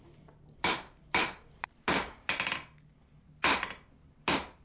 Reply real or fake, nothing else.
real